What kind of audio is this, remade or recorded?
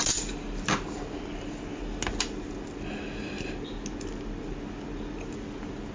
recorded